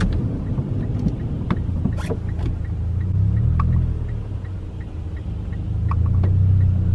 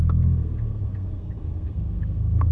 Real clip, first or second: first